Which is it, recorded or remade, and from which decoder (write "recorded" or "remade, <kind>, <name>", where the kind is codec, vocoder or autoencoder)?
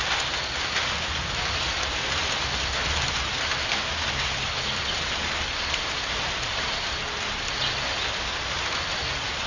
recorded